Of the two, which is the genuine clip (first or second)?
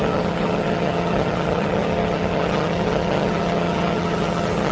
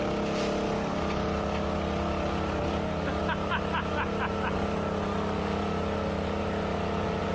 second